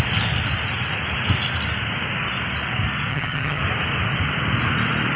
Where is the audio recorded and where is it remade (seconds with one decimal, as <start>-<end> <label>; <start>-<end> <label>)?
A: 0.0-3.1 recorded; 3.1-3.6 remade; 3.6-5.2 recorded